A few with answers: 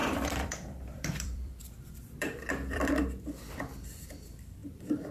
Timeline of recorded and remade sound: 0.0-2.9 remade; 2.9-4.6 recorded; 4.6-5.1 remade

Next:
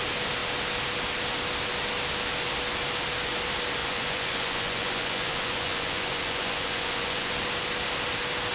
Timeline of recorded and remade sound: 0.0-3.8 recorded; 3.8-7.3 remade; 7.3-8.5 recorded

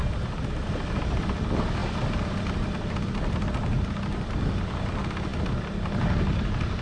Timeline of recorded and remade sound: 0.0-6.8 recorded

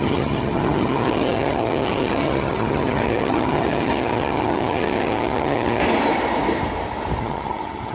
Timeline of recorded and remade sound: 0.0-5.8 remade; 5.8-7.2 recorded; 7.2-7.9 remade

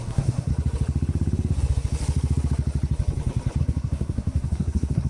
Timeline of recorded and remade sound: 0.0-0.5 remade; 0.5-3.6 recorded; 3.6-5.1 remade

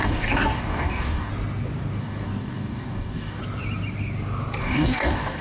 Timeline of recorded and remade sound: 0.0-1.3 remade; 1.3-2.0 recorded; 2.0-3.4 remade; 3.4-4.6 recorded; 4.6-5.4 remade

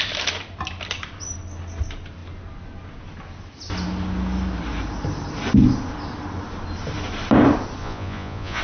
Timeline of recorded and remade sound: 0.0-7.8 recorded; 7.8-8.6 remade

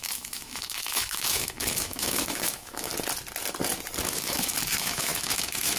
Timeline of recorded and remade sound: 0.0-2.9 remade; 2.9-4.1 recorded; 4.1-5.8 remade